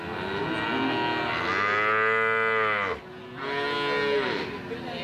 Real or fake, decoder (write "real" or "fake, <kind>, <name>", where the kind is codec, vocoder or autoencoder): real